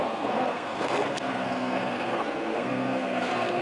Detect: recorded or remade remade